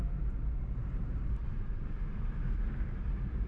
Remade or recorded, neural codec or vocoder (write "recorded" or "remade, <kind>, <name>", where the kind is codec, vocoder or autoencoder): remade, vocoder, BigVGAN v2